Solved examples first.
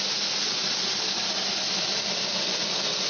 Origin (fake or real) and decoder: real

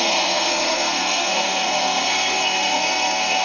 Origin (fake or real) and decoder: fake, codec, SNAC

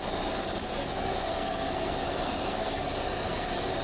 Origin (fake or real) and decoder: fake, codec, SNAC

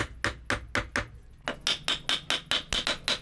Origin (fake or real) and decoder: real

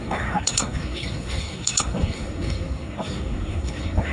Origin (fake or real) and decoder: fake, codec, SNAC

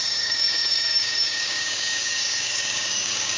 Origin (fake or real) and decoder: fake, codec, DAC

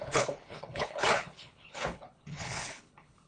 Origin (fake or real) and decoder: fake, codec, HILCodec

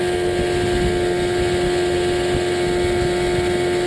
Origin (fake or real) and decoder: real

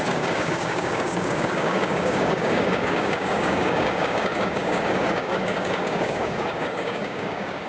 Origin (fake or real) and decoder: fake, codec, DAC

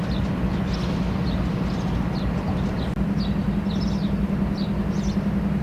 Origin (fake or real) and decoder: real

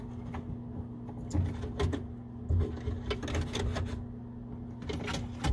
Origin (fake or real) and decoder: real